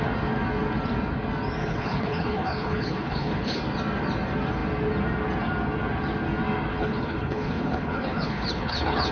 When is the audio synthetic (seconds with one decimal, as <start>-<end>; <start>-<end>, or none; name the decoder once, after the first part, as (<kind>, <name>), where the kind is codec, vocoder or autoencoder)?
1.6-3.6 (codec, HILCodec); 6.7-9.1